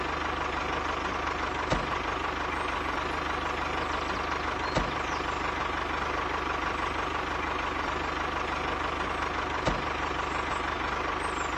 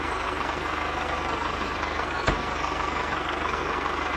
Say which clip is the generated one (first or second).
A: second